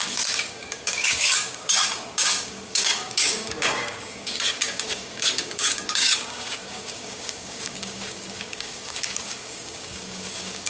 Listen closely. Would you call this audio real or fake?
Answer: fake